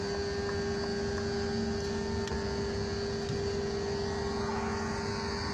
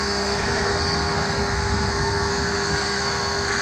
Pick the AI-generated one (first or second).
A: second